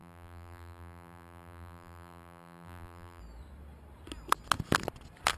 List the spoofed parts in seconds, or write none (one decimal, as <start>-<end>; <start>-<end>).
0.0-3.2